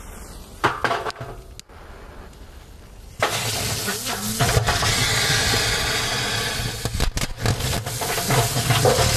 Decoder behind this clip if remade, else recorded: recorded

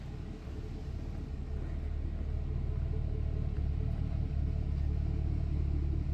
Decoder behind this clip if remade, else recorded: recorded